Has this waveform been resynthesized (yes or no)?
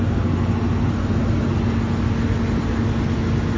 no